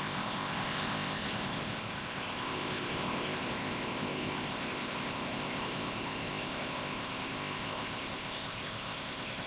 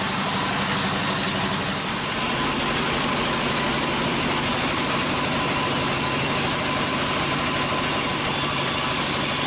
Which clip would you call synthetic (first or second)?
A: first